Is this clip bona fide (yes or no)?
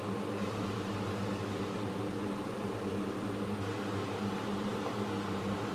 no